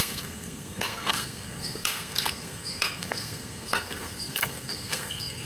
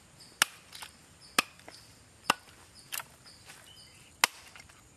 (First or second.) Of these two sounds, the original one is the second